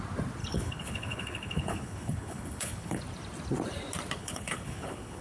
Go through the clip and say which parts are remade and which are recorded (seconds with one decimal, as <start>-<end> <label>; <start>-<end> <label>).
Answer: 0.0-0.4 recorded; 0.4-3.0 remade; 3.0-4.2 recorded; 4.2-5.2 remade